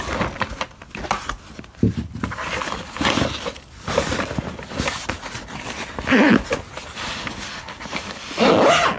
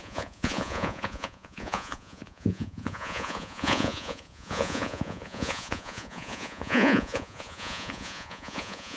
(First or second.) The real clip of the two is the first